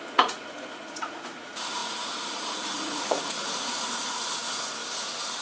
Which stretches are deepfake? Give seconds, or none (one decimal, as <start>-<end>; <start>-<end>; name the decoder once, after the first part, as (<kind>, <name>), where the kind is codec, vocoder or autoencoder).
0.0-4.8 (vocoder, Vocos)